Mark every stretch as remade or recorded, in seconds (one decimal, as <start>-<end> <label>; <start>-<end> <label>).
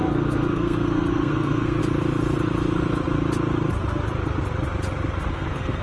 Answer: 0.0-1.8 remade; 1.8-5.3 recorded; 5.3-5.8 remade